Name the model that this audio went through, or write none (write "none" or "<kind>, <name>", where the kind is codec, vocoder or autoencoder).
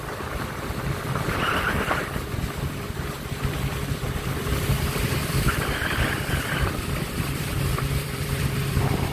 vocoder, BigVGAN v2